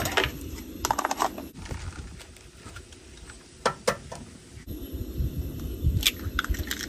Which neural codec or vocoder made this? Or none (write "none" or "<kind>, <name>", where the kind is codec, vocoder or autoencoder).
none